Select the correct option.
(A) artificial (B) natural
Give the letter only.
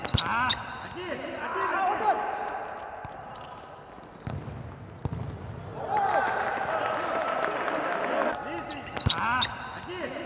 B